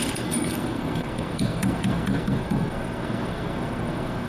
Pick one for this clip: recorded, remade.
remade